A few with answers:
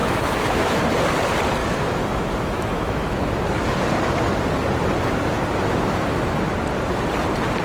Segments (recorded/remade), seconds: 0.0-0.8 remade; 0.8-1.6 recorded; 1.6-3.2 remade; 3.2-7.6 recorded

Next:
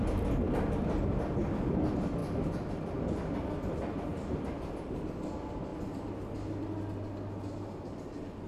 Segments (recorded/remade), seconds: 0.0-8.5 recorded

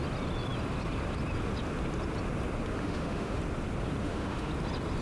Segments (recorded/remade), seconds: 0.0-2.8 recorded; 2.8-3.4 remade; 3.4-4.0 recorded; 4.0-4.5 remade; 4.5-5.0 recorded